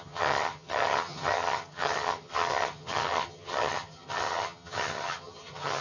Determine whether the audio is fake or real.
fake